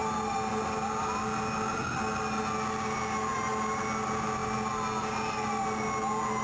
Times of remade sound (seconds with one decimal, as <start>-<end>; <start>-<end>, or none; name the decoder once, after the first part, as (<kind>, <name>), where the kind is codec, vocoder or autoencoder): none